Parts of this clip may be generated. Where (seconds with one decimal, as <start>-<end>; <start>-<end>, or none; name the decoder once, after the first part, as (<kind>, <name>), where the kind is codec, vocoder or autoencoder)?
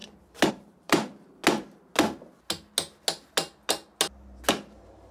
0.5-1.4 (vocoder, BigVGAN v2); 4.5-5.1